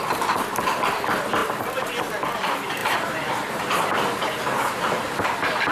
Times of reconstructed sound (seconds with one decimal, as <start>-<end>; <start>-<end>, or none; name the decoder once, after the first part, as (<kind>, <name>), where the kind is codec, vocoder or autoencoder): 1.4-1.9 (vocoder, BigVGAN v2); 2.8-3.3